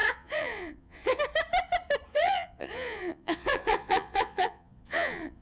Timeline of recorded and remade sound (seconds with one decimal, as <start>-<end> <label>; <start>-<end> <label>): 0.0-1.2 remade; 1.2-2.1 recorded; 2.1-5.4 remade